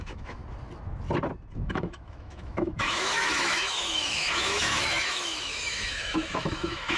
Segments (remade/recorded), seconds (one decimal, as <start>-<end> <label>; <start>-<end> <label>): 0.0-0.4 remade; 0.4-1.5 recorded; 1.5-7.0 remade